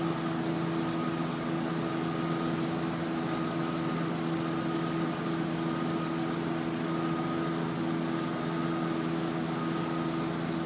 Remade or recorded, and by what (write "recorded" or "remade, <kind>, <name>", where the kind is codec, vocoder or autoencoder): recorded